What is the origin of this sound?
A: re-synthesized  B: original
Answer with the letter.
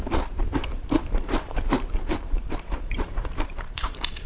A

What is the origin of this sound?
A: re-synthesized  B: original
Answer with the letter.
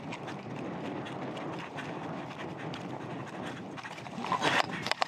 B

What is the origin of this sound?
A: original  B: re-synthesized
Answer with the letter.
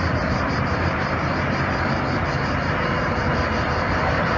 B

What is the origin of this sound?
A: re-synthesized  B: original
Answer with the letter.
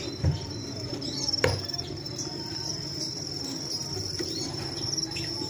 A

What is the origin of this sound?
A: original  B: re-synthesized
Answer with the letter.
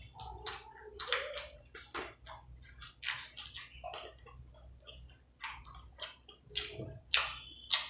A